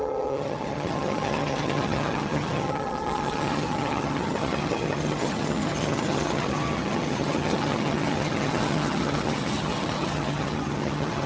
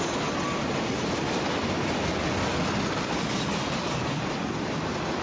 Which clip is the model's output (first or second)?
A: first